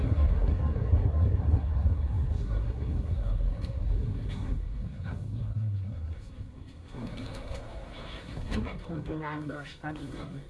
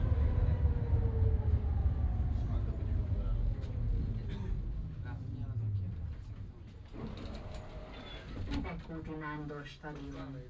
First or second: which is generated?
first